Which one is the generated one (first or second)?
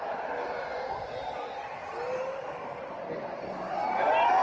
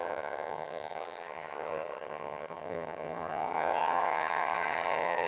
second